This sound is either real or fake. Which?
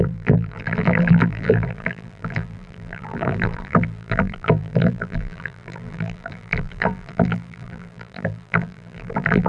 fake